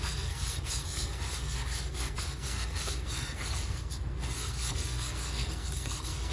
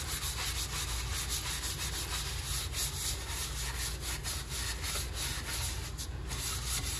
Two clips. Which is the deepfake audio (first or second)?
first